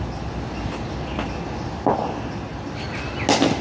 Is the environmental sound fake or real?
real